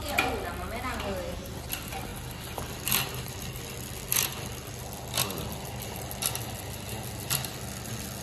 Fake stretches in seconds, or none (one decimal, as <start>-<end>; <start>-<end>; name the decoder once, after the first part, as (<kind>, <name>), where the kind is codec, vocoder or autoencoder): none

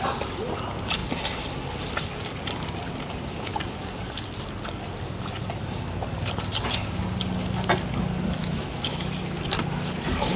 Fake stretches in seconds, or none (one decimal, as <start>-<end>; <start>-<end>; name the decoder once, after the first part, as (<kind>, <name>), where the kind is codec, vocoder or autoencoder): 8.4-9.1 (autoencoder, DAC-VAE)

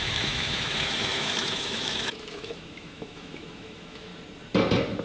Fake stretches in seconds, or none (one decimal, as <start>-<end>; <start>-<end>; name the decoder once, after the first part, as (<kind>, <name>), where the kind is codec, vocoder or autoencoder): 0.0-4.1 (autoencoder, DAC-VAE)

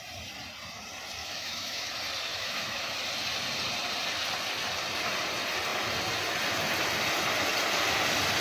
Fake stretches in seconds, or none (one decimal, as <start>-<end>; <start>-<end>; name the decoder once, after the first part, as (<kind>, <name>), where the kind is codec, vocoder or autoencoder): 1.2-1.9 (autoencoder, DAC-VAE); 2.3-3.0

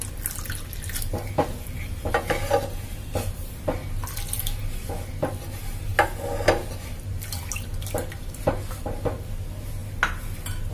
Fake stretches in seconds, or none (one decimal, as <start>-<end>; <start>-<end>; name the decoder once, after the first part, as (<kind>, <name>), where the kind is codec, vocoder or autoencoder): none

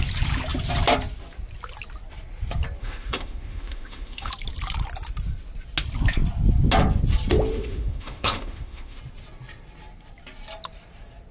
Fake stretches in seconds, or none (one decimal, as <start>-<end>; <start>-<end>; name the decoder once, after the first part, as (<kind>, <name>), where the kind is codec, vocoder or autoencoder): 2.8-4.3 (autoencoder, DAC-VAE); 7.5-9.0

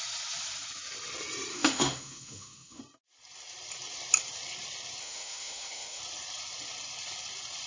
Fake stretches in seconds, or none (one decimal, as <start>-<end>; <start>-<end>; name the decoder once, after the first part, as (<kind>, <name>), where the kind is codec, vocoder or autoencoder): 1.5-2.8 (autoencoder, DAC-VAE); 5.0-6.0

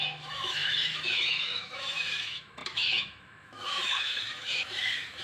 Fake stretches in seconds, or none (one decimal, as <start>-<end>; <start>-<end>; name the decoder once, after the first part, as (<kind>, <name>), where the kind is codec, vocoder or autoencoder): 0.0-5.2 (autoencoder, DAC-VAE)